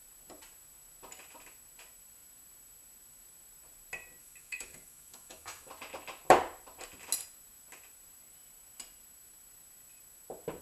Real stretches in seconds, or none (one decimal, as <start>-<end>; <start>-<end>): 0.0-4.2; 5.7-10.6